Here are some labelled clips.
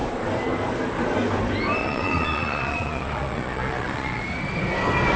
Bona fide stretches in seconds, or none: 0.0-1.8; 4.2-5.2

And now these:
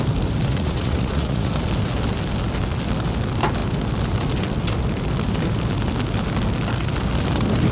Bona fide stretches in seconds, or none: 0.0-0.5; 1.5-7.7

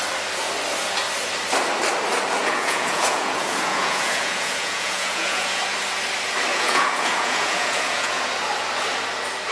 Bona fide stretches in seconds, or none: 0.0-2.4; 5.6-6.5; 8.2-9.5

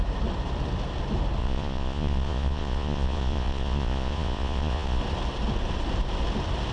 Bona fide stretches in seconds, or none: 0.0-1.4; 5.0-6.7

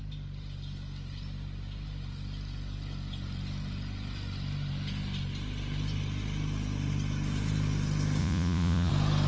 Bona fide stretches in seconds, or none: 0.0-8.2; 8.9-9.3

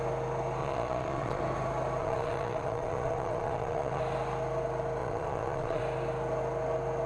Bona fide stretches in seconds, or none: 0.0-0.6; 1.4-2.0; 4.0-5.0; 5.8-7.1

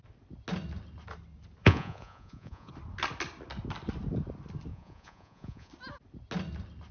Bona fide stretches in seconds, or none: 0.0-1.6; 2.7-4.7; 5.7-6.9

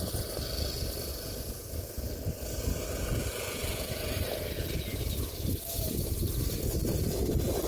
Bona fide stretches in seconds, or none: 0.0-1.1; 1.9-3.3; 4.0-7.7